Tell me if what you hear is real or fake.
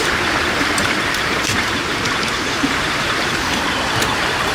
fake